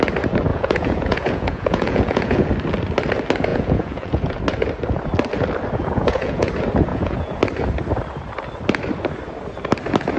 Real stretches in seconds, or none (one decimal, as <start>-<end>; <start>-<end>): 0.0-0.5; 2.5-3.5; 4.4-5.8; 6.5-6.9; 7.4-10.2